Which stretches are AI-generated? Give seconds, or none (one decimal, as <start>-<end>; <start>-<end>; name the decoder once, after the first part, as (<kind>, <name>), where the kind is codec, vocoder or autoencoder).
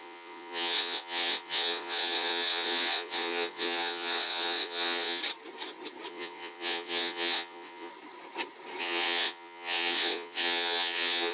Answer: 0.0-5.2 (vocoder, WaveNeXt); 6.1-7.9; 8.8-11.3